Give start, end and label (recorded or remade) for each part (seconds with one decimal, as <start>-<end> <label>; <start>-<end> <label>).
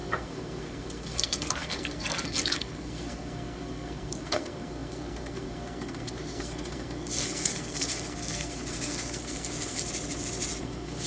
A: 0.0-9.8 remade; 9.8-10.6 recorded; 10.6-11.1 remade